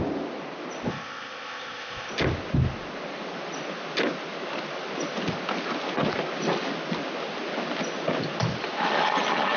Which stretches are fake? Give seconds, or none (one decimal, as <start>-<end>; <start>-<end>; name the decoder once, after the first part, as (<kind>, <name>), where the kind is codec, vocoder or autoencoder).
0.9-2.1 (codec, ZipCodec)